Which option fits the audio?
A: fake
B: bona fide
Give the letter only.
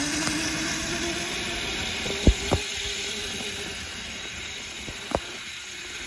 B